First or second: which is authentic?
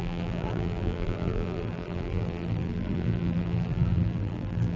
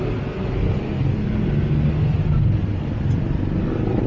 second